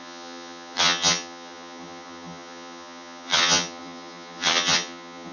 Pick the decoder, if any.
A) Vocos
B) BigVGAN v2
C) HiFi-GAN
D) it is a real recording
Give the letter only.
C